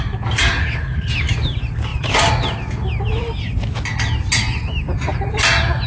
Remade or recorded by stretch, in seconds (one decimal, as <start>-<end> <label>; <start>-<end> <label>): 0.0-0.6 recorded; 0.6-1.1 remade; 1.1-5.9 recorded